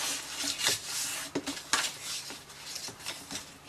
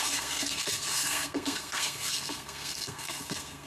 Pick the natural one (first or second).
first